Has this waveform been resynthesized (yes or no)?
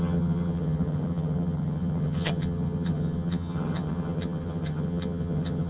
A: yes